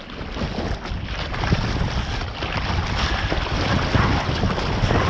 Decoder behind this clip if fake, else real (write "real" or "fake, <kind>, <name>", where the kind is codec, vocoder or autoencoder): real